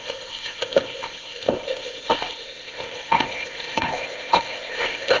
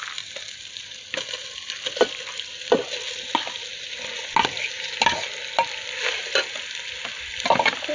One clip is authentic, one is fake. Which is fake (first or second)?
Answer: first